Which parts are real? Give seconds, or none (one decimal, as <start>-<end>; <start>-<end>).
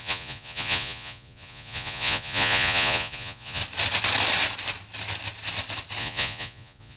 3.6-6.0